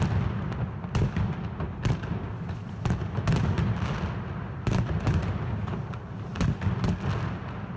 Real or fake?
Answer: real